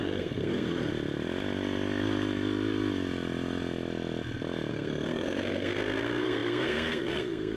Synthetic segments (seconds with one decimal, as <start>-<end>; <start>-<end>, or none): 0.0-0.9; 4.7-7.6